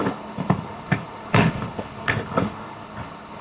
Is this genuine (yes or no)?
no